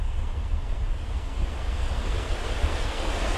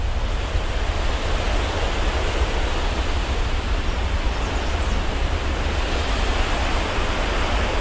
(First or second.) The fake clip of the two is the first